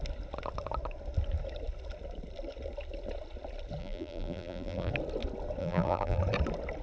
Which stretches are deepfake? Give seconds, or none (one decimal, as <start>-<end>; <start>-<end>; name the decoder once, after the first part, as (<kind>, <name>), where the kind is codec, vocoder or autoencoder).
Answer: 3.8-4.9 (vocoder, BigVGAN v2); 5.6-6.2